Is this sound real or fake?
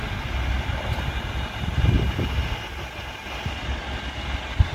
real